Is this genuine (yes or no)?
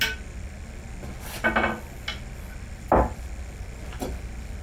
yes